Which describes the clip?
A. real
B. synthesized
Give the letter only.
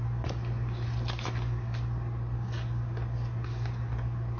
A